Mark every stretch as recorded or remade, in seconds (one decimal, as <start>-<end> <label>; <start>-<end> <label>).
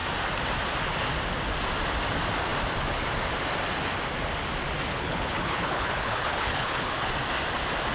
0.0-4.9 recorded; 4.9-7.1 remade; 7.1-7.9 recorded